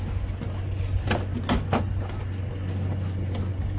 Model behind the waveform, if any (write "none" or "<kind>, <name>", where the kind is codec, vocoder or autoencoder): none